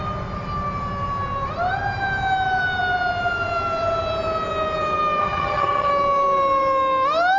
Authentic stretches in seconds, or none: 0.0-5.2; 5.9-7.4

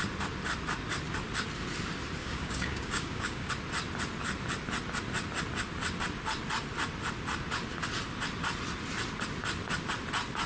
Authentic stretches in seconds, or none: 0.0-2.2; 3.5-10.5